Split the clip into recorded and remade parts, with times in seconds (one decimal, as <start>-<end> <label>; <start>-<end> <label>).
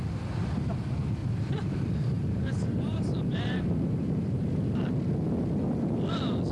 0.0-1.2 recorded; 1.2-5.1 remade; 5.1-6.5 recorded